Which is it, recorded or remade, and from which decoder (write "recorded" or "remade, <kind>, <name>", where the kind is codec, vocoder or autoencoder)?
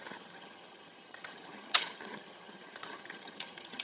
remade, vocoder, HiFi-GAN